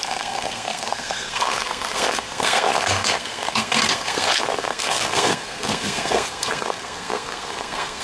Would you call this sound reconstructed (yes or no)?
yes